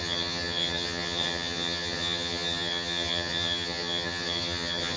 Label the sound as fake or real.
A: fake